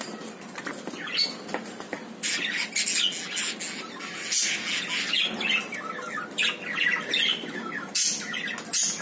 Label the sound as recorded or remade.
recorded